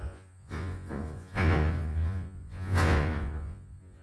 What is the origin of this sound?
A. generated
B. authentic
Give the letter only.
A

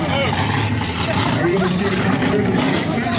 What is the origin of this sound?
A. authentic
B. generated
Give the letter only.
A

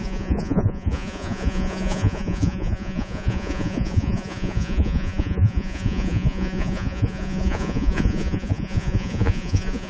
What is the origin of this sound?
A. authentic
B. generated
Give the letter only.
B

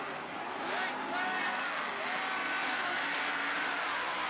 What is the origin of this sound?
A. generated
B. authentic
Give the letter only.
B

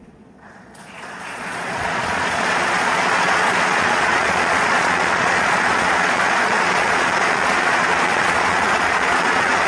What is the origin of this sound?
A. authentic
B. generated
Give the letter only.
B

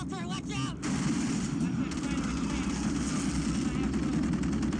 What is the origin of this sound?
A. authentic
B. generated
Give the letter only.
A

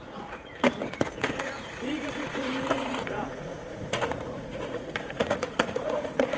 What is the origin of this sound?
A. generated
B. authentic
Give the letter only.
A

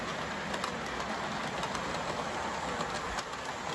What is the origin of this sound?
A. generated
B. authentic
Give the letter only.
B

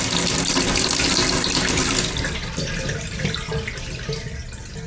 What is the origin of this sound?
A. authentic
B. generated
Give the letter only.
A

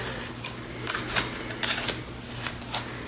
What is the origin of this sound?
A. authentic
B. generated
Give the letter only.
A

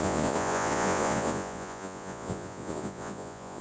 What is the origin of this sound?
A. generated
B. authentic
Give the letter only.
A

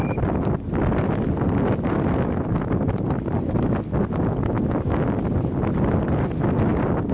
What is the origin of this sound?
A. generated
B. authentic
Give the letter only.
B